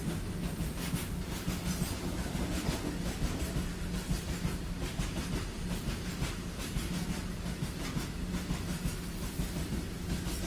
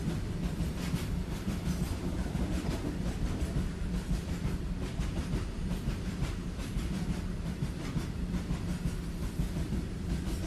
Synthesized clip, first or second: second